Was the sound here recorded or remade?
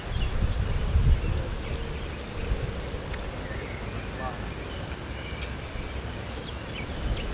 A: recorded